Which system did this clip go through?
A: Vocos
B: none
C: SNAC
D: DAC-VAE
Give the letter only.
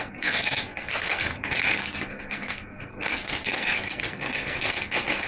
C